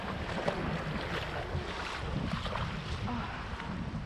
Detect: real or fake real